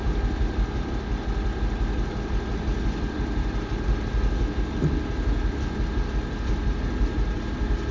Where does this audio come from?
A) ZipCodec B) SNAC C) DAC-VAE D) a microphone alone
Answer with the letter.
D